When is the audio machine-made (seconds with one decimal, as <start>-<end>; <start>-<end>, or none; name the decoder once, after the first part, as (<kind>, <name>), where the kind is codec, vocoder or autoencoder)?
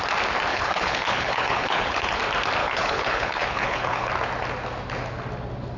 0.5-2.2 (codec, HILCodec); 2.6-4.1